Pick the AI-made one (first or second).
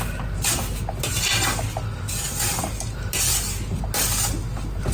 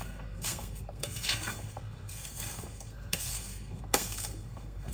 second